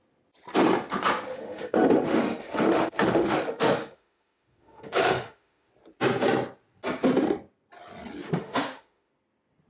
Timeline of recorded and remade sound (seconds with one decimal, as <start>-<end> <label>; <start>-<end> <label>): 0.0-1.3 recorded; 1.3-5.7 remade; 5.7-8.2 recorded; 8.2-9.1 remade; 9.1-9.7 recorded